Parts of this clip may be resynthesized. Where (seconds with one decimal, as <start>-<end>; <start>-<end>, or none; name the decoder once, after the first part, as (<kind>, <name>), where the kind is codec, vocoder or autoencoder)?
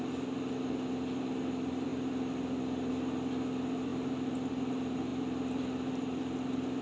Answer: none